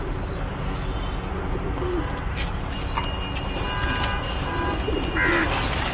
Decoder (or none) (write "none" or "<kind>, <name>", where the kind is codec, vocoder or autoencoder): none